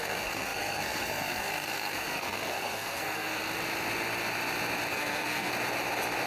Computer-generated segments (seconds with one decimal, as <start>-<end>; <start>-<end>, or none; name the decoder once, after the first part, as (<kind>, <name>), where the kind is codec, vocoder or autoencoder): 0.0-3.4 (codec, SNAC); 4.9-5.5